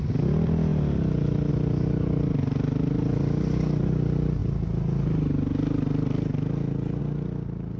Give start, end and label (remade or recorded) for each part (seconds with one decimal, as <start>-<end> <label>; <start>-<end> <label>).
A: 0.0-7.8 recorded